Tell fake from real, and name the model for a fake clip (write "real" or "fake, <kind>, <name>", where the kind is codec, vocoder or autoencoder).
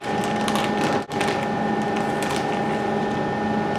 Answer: real